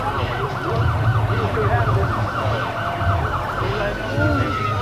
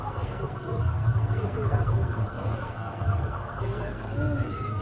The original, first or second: first